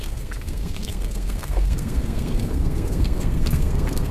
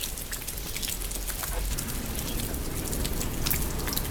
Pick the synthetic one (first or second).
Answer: first